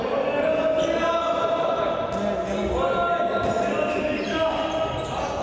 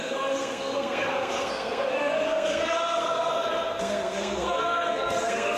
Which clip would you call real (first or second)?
first